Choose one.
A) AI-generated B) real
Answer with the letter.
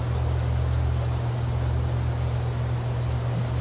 B